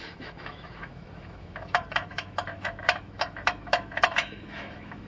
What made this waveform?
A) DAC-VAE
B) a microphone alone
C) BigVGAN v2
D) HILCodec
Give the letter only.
A